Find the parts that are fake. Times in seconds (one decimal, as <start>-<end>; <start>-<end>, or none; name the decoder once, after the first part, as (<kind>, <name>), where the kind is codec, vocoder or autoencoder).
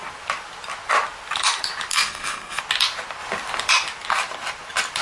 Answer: 1.9-2.6 (codec, SNAC)